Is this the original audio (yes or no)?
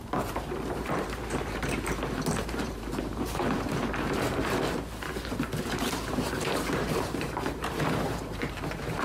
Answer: no